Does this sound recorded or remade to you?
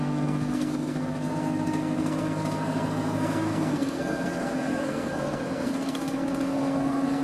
remade